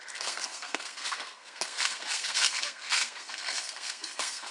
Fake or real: fake